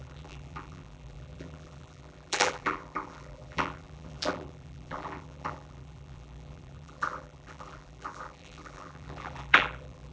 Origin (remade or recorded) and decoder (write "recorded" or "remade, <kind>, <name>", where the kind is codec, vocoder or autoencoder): remade, vocoder, BigVGAN v2